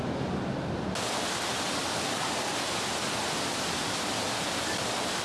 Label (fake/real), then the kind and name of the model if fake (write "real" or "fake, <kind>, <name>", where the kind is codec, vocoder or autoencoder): real